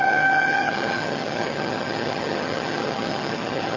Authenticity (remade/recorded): remade